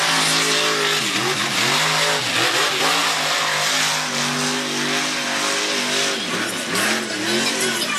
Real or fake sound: real